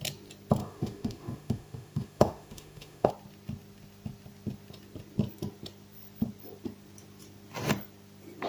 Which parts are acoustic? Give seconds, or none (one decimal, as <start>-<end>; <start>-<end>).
0.0-0.6; 3.1-8.5